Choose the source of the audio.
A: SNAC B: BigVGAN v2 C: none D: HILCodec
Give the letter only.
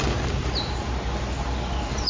C